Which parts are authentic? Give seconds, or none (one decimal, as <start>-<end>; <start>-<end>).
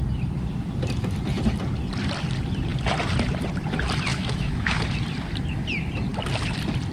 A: 0.0-4.1; 4.8-6.9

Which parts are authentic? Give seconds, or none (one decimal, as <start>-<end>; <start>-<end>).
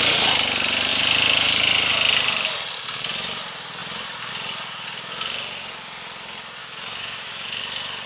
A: 0.0-6.6; 7.6-8.1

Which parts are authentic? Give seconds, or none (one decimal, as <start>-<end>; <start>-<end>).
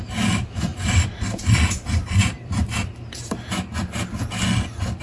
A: 3.8-5.0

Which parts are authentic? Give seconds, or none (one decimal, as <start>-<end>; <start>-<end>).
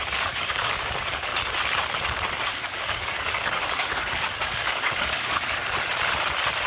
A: 1.3-2.5; 5.6-6.7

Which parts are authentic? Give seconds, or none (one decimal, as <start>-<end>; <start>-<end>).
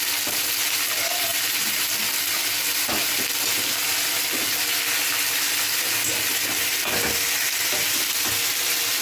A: 0.0-9.0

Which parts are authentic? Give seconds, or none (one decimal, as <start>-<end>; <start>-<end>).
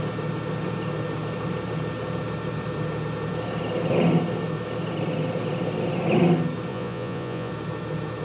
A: 0.0-6.7; 7.5-8.2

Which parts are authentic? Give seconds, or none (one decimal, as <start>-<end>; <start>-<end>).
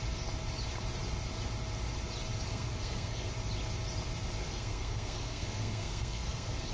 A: 0.0-2.5; 3.3-4.4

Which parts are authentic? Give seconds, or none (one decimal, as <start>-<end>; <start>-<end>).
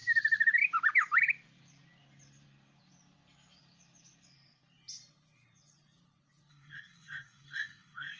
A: 0.0-6.5